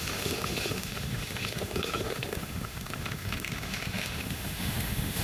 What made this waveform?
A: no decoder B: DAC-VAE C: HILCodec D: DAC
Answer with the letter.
B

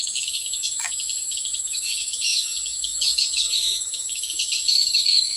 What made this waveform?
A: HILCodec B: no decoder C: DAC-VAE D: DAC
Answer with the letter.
C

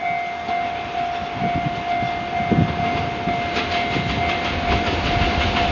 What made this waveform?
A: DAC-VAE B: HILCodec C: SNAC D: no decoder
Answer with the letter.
D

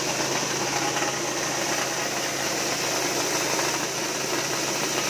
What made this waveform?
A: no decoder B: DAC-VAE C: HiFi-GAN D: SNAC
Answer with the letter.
A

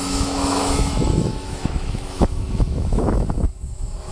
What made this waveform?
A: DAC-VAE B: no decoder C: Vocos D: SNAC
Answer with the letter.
A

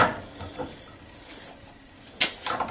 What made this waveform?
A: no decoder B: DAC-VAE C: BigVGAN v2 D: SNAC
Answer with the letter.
A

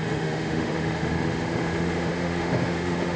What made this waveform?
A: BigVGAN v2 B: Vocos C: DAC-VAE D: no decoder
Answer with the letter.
C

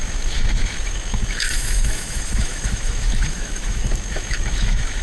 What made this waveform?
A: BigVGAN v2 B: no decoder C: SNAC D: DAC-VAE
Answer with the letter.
D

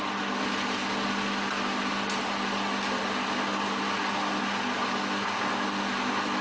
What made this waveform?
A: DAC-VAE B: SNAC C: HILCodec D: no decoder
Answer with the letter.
D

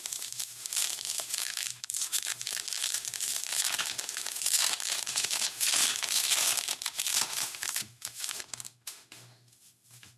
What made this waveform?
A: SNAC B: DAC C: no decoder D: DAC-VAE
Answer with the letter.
D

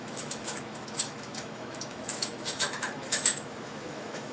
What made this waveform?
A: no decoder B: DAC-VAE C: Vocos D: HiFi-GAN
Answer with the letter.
B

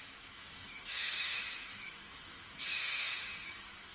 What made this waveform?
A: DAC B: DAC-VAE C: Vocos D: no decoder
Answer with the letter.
B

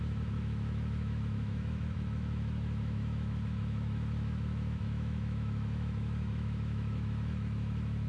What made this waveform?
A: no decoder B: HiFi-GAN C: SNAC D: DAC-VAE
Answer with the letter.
D